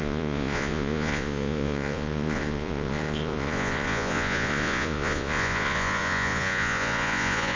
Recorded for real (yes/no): no